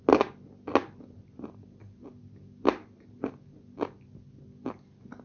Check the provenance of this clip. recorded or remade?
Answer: recorded